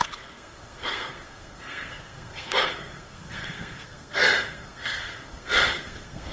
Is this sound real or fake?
fake